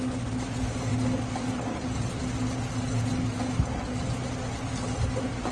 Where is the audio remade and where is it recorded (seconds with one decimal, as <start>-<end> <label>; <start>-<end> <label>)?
0.0-5.5 recorded